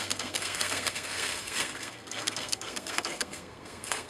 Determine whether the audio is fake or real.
fake